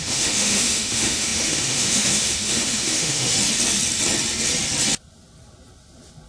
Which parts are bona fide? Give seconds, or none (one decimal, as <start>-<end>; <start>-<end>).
3.3-6.3